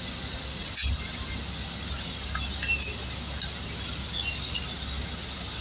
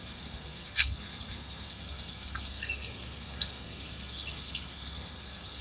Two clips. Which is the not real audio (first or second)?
second